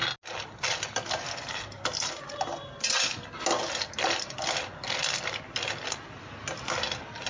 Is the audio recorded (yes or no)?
yes